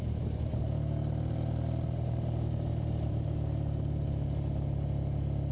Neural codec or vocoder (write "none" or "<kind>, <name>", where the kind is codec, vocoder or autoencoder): none